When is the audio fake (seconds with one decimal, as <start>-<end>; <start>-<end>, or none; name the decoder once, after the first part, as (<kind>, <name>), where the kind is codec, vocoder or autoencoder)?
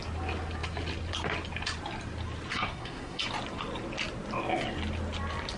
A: 2.5-3.2 (codec, SNAC)